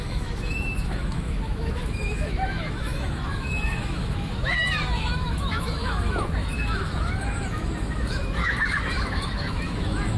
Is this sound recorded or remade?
remade